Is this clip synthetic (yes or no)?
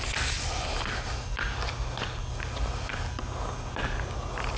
no